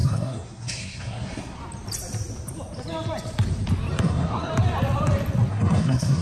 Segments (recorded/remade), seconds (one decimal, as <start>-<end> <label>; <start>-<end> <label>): 0.0-1.6 remade; 1.6-4.0 recorded; 4.0-4.5 remade; 4.5-5.5 recorded; 5.5-6.2 remade

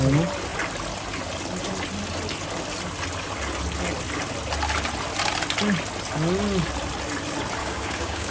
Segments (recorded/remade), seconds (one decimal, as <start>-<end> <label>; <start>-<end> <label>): 0.0-7.6 recorded; 7.6-8.3 remade

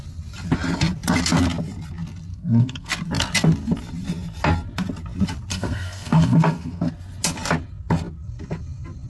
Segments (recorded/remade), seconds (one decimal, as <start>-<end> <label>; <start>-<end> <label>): 0.0-2.3 recorded; 2.3-2.9 remade; 2.9-5.5 recorded; 5.5-6.9 remade; 6.9-9.1 recorded

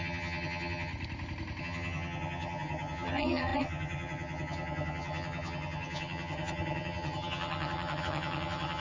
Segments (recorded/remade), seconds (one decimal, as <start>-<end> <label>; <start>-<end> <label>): 0.0-0.9 remade; 0.9-1.6 recorded; 1.6-8.8 remade

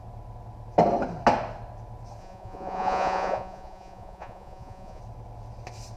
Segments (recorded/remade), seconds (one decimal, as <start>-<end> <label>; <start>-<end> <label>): 0.0-2.2 recorded; 2.2-5.0 remade; 5.0-6.0 recorded

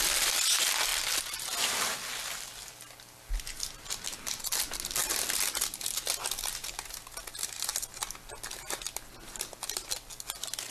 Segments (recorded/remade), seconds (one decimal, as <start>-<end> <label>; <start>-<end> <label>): 0.0-10.7 recorded